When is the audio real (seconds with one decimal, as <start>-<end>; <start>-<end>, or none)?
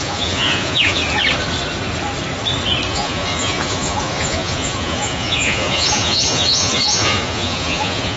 1.0-2.9